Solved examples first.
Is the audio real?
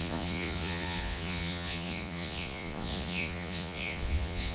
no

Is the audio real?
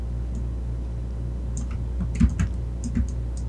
yes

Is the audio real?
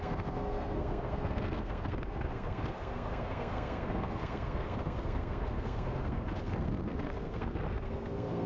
no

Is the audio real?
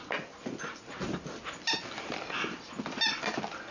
yes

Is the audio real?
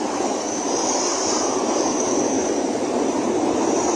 no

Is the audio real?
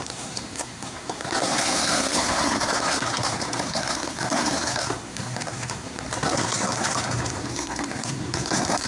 no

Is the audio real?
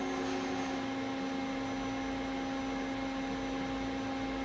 yes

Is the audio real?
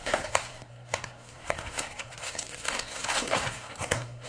no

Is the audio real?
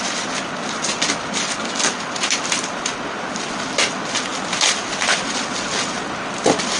yes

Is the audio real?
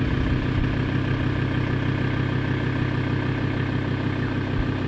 yes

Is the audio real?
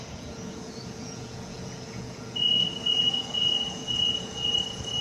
no